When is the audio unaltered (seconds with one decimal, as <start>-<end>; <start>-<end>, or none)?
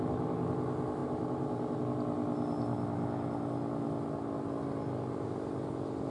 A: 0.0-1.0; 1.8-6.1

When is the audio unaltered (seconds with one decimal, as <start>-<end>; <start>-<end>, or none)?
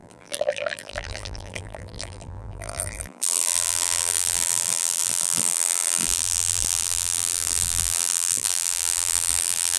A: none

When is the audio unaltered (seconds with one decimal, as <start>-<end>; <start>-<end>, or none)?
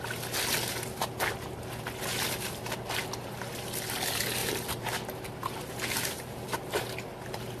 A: 0.0-4.4; 6.9-7.6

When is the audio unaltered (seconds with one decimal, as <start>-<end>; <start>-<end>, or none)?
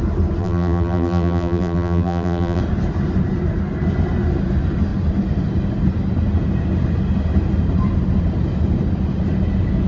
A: 0.0-0.4; 2.6-9.9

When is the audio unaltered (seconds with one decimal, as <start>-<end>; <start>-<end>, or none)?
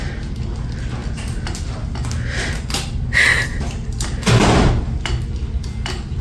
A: 0.0-6.2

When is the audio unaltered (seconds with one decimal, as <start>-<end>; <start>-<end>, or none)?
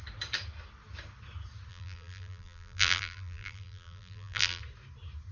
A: 0.0-1.7; 4.6-5.3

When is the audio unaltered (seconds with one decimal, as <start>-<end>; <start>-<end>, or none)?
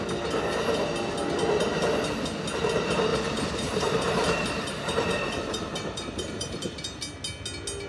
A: 0.0-3.1; 7.0-7.9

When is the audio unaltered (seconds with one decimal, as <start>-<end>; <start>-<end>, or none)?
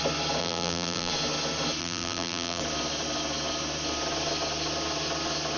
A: 0.0-0.4; 1.1-1.8; 2.6-5.6